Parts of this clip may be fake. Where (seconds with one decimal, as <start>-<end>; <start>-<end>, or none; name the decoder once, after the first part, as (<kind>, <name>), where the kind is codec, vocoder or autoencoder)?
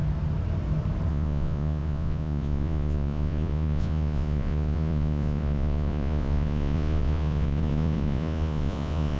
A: 1.1-9.2 (vocoder, Vocos)